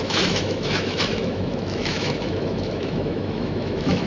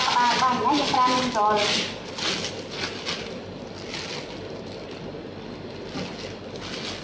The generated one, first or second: first